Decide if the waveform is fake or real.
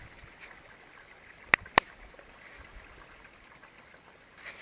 real